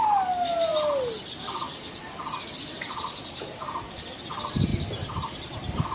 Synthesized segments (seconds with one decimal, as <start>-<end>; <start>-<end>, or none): none

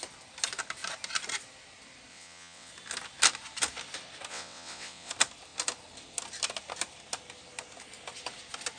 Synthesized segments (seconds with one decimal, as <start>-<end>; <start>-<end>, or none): 2.1-2.7; 4.3-5.1

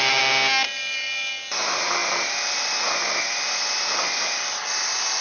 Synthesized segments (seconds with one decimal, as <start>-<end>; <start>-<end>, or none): none

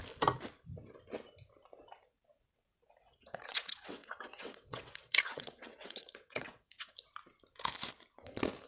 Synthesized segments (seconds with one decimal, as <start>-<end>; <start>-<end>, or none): 3.0-6.9

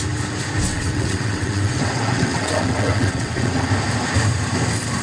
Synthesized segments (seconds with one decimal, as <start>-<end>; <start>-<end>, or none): 0.7-3.7

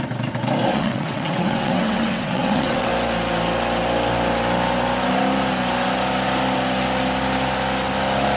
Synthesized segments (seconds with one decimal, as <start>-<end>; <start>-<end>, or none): 0.7-2.9

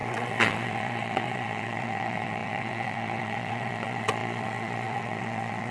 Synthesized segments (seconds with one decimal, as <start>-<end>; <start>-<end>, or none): 0.0-5.7